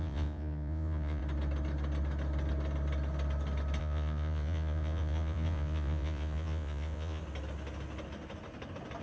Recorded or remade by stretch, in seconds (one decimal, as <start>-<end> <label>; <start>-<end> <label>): 0.0-1.2 remade; 1.2-3.8 recorded; 3.8-7.2 remade; 7.2-9.0 recorded